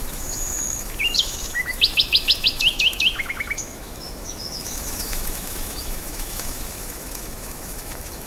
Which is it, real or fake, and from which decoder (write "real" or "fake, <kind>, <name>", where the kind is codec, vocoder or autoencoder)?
fake, autoencoder, DAC-VAE